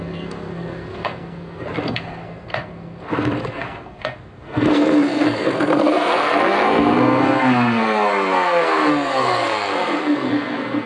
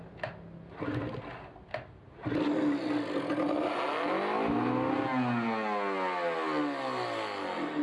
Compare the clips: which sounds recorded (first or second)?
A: second